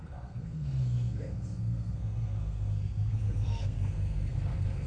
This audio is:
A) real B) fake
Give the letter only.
B